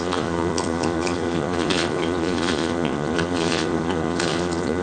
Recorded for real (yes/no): no